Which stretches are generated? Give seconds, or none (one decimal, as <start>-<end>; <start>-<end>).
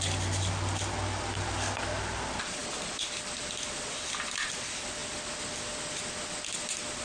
0.0-2.6; 3.2-7.0